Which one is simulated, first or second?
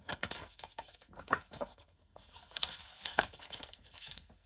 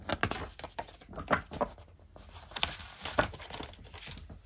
first